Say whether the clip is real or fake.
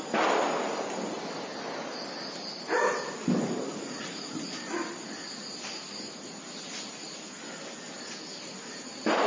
real